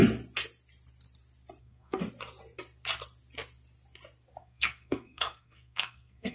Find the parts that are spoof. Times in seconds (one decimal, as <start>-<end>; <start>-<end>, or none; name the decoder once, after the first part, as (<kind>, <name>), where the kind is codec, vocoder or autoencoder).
1.6-2.0 (codec, SNAC); 4.4-6.3